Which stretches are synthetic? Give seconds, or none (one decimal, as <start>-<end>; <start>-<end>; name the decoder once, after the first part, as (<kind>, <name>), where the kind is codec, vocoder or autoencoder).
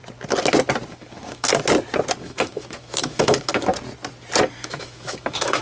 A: 0.9-1.5 (autoencoder, DAC-VAE); 2.2-3.7; 4.5-5.6